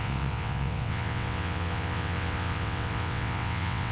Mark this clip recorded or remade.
remade